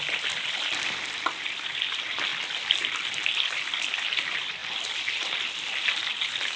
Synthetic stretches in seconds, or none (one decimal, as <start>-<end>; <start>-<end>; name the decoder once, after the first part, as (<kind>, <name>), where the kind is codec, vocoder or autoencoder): 0.0-2.3 (vocoder, BigVGAN v2); 2.8-6.6